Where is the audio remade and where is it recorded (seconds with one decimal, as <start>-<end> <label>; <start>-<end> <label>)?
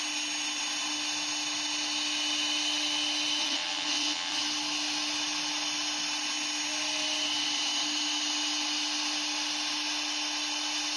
0.0-3.4 recorded; 3.4-4.4 remade; 4.4-11.0 recorded